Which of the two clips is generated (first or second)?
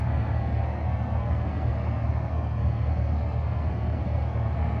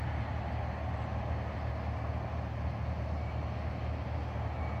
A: first